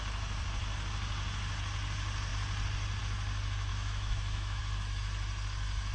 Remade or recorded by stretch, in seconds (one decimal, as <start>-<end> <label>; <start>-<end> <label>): 0.0-3.7 recorded; 3.7-4.6 remade; 4.6-5.9 recorded